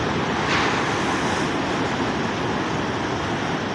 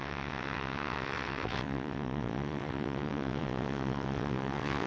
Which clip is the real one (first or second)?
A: first